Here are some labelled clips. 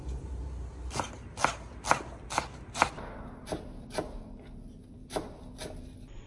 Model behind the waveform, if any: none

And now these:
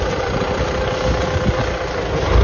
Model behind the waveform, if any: none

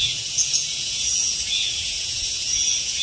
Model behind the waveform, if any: vocoder, Vocos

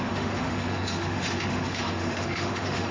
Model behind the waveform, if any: autoencoder, DAC-VAE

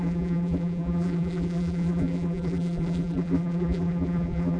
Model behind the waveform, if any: vocoder, BigVGAN v2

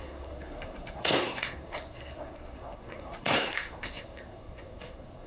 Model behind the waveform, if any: codec, SNAC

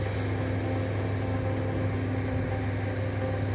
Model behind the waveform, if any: none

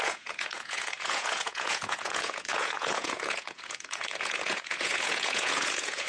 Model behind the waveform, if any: vocoder, Vocos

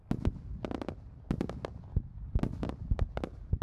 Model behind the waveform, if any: none